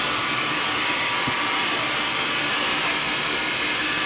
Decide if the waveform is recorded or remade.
remade